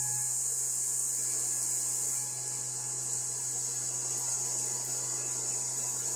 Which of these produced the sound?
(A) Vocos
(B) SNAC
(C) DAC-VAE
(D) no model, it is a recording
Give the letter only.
D